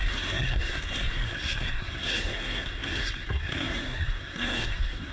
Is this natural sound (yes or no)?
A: no